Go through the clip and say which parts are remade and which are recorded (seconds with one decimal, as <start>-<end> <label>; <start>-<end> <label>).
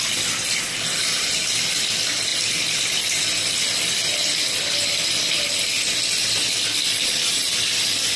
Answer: 0.0-8.2 recorded